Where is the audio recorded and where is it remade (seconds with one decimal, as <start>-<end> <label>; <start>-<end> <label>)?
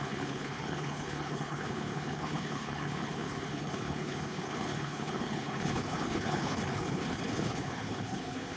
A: 0.0-8.6 remade